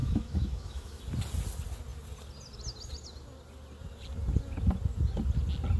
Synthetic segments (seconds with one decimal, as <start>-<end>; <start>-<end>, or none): 0.0-1.0